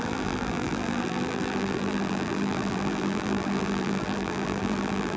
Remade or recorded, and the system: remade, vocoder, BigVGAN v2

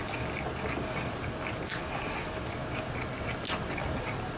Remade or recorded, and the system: recorded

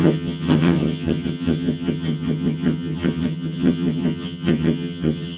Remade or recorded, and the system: remade, vocoder, HiFi-GAN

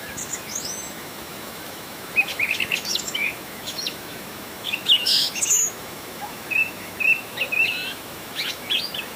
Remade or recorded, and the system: remade, autoencoder, DAC-VAE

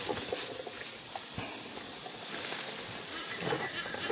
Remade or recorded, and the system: recorded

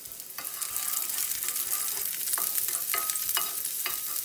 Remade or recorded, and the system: recorded